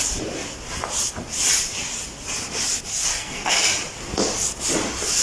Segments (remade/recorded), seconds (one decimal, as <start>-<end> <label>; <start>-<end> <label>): 0.0-2.9 recorded; 2.9-3.7 remade; 3.7-5.2 recorded